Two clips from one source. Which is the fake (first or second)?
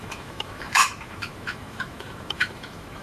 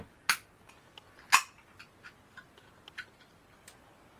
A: first